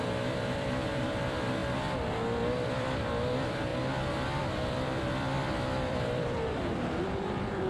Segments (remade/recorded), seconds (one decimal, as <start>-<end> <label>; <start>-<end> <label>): 0.0-1.6 remade; 1.6-2.7 recorded; 2.7-3.7 remade; 3.7-4.4 recorded; 4.4-7.7 remade